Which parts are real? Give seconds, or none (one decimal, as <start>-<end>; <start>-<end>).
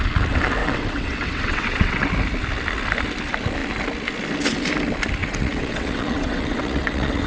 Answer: 0.0-0.6; 2.1-5.2